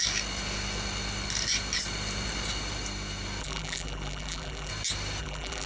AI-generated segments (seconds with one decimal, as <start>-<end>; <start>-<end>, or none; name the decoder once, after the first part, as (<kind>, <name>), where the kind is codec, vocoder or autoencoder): 3.4-4.7 (vocoder, BigVGAN v2); 5.2-5.7